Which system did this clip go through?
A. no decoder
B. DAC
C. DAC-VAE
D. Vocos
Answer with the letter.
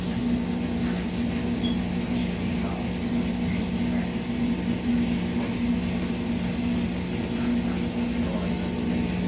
A